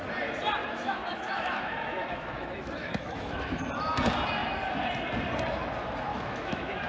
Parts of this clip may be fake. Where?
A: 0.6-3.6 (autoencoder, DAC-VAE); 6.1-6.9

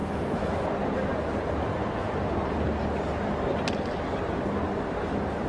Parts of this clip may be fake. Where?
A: 0.0-0.5 (autoencoder, DAC-VAE)

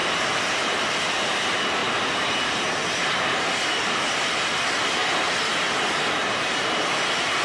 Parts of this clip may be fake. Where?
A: 0.0-0.9 (vocoder, BigVGAN v2); 6.2-6.8

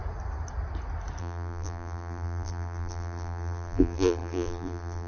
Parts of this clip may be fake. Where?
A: 1.2-5.1 (vocoder, BigVGAN v2)

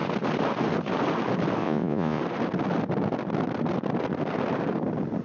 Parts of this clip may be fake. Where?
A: 1.6-2.2 (vocoder, Vocos)

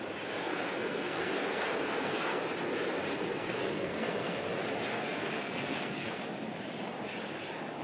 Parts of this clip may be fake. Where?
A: 0.4-2.4 (codec, SNAC); 3.3-4.5; 4.9-6.2